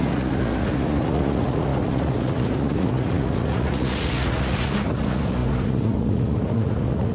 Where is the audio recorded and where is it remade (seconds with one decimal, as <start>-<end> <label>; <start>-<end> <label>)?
0.0-7.1 remade